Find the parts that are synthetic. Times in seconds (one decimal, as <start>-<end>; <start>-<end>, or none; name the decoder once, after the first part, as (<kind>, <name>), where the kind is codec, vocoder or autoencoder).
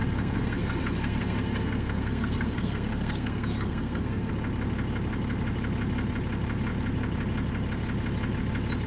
0.0-4.3 (codec, SNAC)